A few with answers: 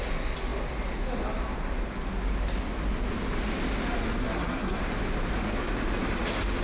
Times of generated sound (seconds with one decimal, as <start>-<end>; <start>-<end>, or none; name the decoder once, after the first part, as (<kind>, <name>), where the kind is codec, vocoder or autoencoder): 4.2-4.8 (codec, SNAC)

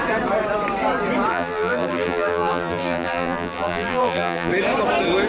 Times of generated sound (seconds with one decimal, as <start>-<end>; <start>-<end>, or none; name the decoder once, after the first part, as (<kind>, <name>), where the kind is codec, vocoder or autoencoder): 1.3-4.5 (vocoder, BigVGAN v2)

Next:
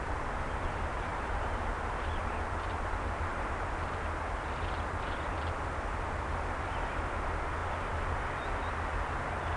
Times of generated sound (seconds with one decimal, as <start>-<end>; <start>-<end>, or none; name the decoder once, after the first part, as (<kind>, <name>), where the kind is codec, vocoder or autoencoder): none

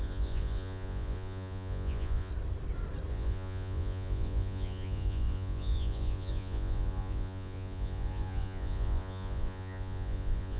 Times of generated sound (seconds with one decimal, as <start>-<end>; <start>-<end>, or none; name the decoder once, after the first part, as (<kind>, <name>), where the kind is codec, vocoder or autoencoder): 0.0-2.3 (vocoder, Vocos); 3.1-10.6